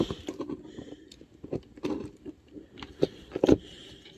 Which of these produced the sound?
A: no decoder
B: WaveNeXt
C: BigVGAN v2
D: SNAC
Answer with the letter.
C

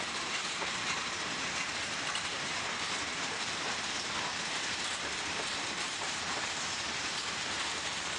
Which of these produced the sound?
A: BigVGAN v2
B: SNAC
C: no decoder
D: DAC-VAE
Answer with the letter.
A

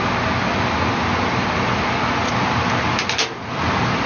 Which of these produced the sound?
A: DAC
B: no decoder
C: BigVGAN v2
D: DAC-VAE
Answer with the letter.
B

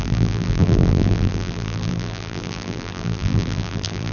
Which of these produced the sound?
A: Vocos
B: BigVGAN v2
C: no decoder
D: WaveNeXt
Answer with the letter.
B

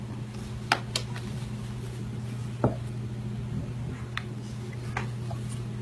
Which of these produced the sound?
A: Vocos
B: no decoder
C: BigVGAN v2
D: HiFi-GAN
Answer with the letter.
B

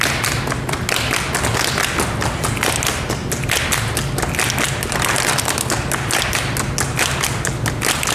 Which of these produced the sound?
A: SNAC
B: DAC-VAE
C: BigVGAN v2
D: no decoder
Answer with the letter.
D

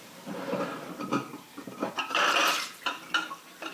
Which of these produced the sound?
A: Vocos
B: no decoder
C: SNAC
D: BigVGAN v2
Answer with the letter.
D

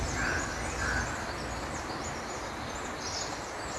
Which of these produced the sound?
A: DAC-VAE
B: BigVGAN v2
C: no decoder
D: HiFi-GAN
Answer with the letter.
C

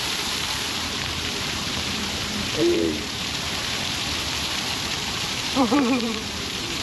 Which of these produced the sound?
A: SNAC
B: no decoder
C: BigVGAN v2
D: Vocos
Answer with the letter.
C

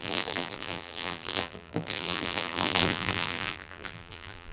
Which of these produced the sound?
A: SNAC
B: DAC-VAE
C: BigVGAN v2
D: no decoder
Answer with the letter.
C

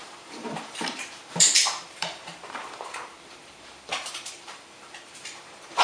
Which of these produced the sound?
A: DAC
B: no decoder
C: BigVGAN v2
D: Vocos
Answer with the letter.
C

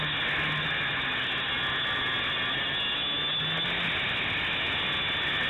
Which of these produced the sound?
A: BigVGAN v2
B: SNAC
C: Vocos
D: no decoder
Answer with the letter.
D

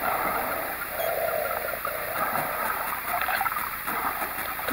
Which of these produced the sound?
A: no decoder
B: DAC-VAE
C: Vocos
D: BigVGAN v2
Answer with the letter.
A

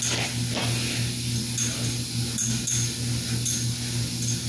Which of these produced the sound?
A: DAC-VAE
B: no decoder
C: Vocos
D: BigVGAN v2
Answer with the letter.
B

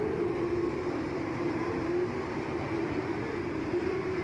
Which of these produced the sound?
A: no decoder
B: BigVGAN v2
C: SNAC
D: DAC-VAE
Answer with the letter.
B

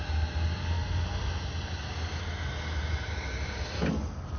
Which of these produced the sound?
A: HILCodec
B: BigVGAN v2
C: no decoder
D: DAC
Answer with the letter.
C